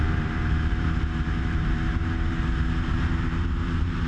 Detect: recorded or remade remade